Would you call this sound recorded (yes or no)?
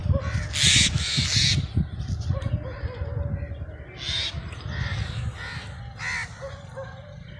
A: yes